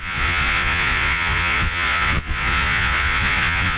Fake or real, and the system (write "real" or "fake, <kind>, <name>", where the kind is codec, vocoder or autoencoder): fake, vocoder, Vocos